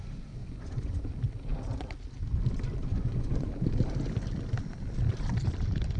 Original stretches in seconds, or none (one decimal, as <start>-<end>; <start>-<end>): 0.0-0.4; 1.1-2.9; 3.5-6.0